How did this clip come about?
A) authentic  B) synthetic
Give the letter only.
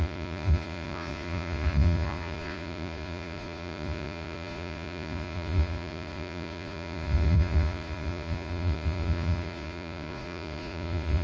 B